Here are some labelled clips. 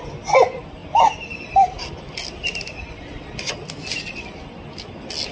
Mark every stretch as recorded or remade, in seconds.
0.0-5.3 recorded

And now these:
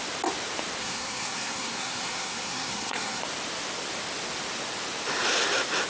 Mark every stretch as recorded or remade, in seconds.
0.0-0.8 recorded; 0.8-3.2 remade; 3.2-5.9 recorded